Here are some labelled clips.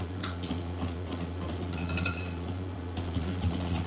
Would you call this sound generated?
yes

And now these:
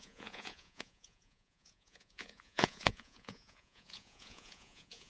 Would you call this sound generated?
yes